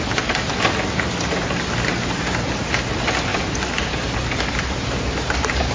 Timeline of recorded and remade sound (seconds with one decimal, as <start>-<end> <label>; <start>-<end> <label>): 0.0-5.7 recorded